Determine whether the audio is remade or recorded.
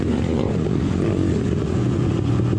remade